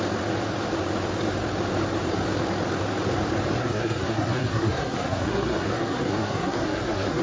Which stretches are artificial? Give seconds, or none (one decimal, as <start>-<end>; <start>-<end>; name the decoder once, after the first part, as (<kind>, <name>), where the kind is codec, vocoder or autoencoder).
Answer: 3.6-7.2 (codec, SNAC)